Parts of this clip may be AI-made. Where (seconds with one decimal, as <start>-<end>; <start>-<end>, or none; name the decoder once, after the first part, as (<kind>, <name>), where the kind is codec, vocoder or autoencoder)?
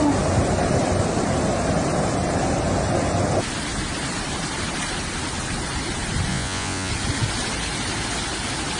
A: 6.3-6.9 (vocoder, Vocos)